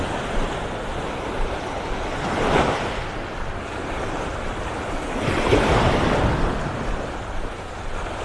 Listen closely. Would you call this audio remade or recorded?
recorded